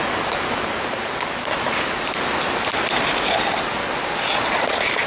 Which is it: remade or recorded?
recorded